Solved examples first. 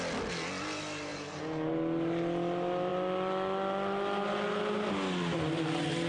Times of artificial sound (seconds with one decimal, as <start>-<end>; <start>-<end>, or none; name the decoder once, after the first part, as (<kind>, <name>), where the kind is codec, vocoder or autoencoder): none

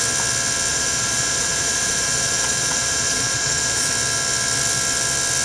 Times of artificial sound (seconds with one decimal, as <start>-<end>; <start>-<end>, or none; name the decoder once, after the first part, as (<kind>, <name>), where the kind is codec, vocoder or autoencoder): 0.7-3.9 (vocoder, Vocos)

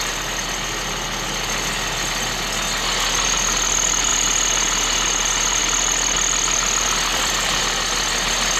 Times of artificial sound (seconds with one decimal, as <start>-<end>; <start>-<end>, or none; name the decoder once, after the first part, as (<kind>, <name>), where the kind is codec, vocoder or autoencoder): 7.1-7.6 (vocoder, BigVGAN v2)